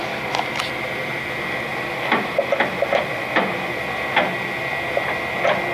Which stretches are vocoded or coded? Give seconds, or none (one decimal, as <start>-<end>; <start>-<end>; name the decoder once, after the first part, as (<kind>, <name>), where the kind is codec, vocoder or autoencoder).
none